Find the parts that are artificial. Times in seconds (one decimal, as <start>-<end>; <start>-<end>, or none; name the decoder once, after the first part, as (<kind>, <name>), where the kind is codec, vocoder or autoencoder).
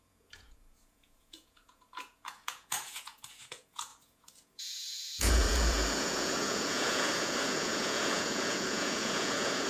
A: 0.0-9.7 (vocoder, Vocos)